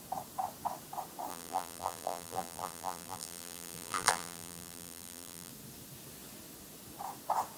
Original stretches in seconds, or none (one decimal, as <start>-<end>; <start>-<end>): 0.0-1.3; 5.5-7.6